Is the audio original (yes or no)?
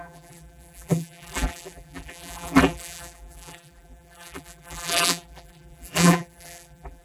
no